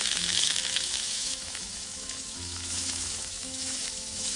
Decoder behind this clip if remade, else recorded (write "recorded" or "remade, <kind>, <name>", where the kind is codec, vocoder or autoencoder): remade, autoencoder, DAC-VAE